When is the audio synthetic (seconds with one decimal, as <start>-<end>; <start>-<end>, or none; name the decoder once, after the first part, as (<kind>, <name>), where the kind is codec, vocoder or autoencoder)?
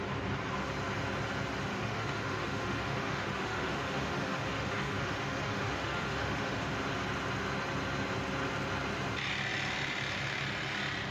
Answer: 1.7-6.7 (autoencoder, DAC-VAE)